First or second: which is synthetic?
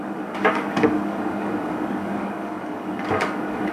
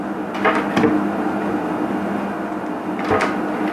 first